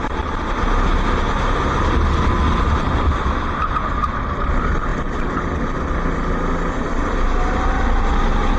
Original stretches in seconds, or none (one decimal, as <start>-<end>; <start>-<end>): 0.0-8.6